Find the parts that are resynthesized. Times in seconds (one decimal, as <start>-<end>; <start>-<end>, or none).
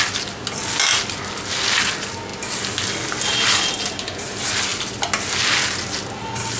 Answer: none